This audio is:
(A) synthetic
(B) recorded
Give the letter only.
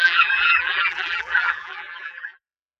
A